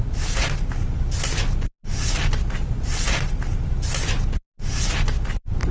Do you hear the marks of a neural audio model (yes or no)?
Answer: no